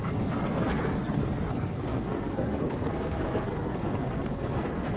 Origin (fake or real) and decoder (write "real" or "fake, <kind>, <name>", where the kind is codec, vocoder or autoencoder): fake, codec, SNAC